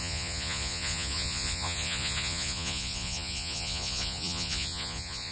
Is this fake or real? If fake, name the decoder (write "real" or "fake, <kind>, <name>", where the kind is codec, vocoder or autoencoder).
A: fake, vocoder, Vocos